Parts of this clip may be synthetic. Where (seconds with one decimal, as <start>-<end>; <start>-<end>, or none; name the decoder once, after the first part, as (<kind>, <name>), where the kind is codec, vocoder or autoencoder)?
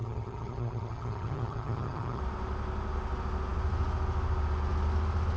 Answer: 0.0-2.2 (vocoder, HiFi-GAN)